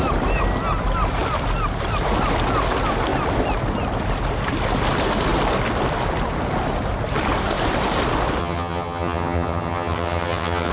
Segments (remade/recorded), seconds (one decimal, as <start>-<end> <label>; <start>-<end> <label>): 0.0-8.4 recorded; 8.4-10.7 remade